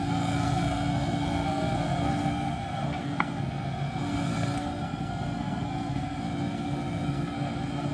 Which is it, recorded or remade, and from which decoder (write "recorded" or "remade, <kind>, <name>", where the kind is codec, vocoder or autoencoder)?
remade, codec, SNAC